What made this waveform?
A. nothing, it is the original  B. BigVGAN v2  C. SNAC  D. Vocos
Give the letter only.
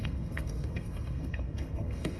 C